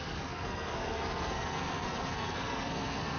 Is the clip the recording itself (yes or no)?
no